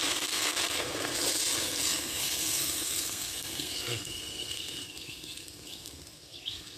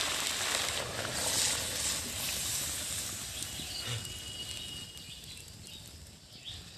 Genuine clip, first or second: second